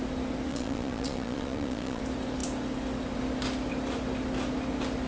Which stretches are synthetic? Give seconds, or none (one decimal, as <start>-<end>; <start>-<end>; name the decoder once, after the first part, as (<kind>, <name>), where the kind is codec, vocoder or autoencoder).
0.5-2.0 (vocoder, Vocos)